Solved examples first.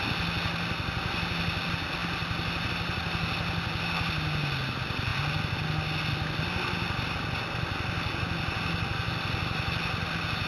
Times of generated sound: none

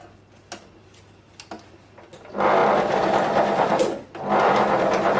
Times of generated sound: none

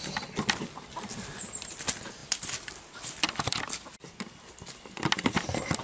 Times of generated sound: none

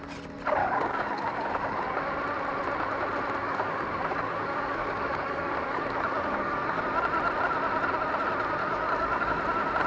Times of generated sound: 0.6-2.0 (codec, DAC); 3.4-6.8; 8.6-9.4

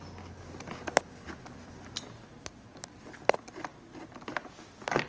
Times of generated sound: none

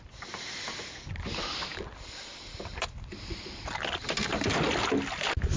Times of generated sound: none